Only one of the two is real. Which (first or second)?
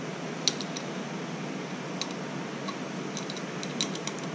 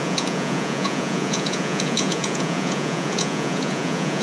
first